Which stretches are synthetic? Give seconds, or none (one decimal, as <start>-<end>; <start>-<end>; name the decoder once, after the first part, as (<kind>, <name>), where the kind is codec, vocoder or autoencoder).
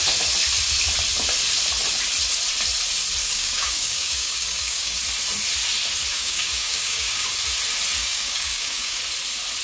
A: 3.2-5.0 (codec, DAC); 6.1-7.3; 8.0-9.0